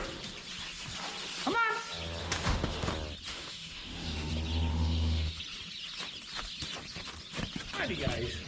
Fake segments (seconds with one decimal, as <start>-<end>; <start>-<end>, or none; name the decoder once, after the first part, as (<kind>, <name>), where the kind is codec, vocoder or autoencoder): 2.2-2.9 (autoencoder, DAC-VAE); 3.3-4.3; 4.7-5.4